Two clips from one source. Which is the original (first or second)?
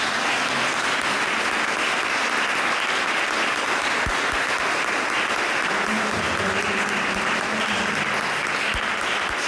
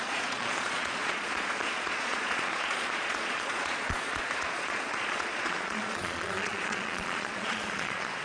first